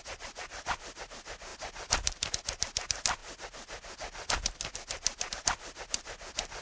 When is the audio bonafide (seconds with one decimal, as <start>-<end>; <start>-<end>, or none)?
0.0-1.5; 2.3-6.6